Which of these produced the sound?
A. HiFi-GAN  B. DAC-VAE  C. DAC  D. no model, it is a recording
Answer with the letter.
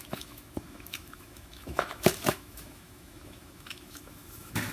B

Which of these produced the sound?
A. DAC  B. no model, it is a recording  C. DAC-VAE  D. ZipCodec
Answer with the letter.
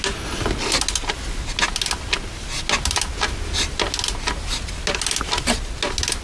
B